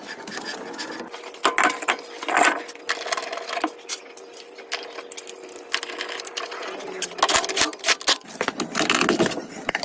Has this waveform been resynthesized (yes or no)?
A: no